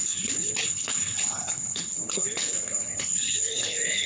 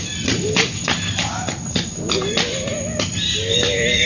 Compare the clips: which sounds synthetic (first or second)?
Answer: first